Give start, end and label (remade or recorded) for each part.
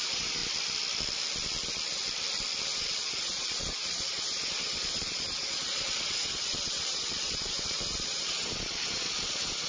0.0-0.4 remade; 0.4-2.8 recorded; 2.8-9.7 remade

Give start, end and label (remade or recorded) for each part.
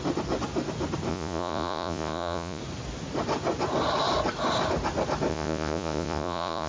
0.0-1.1 recorded; 1.1-2.6 remade; 2.6-5.3 recorded; 5.3-6.7 remade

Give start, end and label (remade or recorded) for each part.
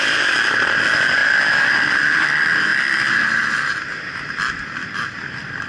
0.0-5.7 recorded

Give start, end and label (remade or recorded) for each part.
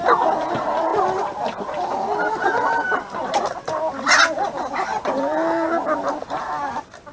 0.0-7.1 recorded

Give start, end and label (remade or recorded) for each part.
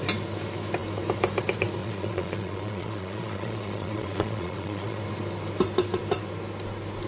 0.0-1.8 recorded; 1.8-5.0 remade; 5.0-7.1 recorded